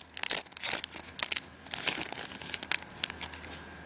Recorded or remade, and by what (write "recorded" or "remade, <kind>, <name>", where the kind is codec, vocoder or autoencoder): recorded